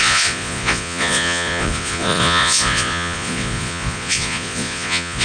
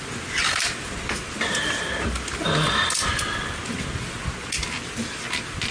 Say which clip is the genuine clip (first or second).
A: second